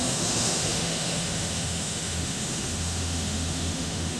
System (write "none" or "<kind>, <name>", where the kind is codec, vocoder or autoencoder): autoencoder, DAC-VAE